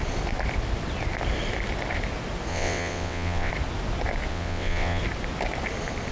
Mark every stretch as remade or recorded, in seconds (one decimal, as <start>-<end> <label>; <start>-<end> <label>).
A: 0.0-2.5 recorded; 2.5-3.5 remade; 3.5-4.3 recorded; 4.3-5.0 remade; 5.0-6.1 recorded